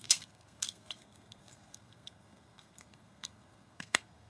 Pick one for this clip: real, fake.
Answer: fake